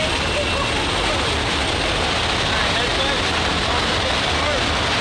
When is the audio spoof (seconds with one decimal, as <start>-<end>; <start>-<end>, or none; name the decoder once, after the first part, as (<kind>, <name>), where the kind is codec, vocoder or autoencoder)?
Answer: none